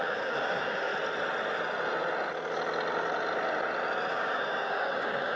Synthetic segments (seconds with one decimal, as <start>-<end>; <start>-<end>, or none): 0.0-0.9; 4.1-5.4